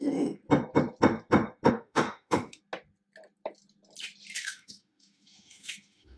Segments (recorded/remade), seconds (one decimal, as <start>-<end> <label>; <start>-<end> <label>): 0.0-0.4 remade; 0.4-1.7 recorded; 1.7-2.6 remade; 2.6-4.4 recorded; 4.4-6.2 remade